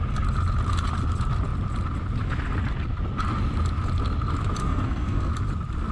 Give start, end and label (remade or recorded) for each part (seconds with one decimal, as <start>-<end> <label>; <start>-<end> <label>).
0.0-4.6 recorded; 4.6-5.3 remade; 5.3-5.9 recorded